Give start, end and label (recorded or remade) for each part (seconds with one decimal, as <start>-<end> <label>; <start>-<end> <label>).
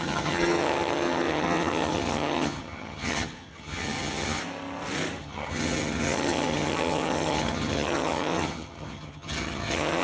0.0-4.4 remade; 4.4-5.2 recorded; 5.2-10.0 remade